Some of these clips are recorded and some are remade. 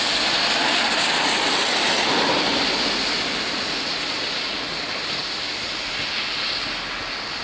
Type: recorded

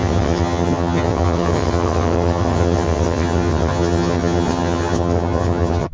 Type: remade